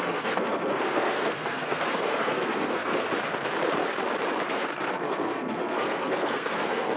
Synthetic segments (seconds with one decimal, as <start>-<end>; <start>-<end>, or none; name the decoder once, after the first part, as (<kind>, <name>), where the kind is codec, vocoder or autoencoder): 0.0-2.9 (codec, SNAC); 4.5-7.0